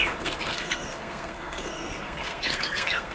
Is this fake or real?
fake